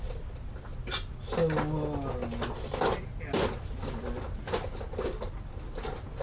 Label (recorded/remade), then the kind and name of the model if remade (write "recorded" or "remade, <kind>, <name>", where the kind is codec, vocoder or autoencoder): recorded